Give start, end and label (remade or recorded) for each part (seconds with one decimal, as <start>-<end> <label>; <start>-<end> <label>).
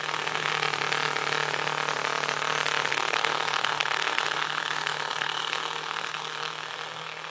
0.0-0.5 remade; 0.5-2.9 recorded; 2.9-7.3 remade